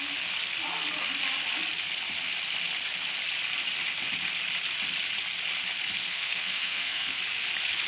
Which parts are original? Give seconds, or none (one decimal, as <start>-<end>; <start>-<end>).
0.0-6.0; 7.2-7.9